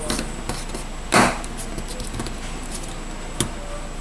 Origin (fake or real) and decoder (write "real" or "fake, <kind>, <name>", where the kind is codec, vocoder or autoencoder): real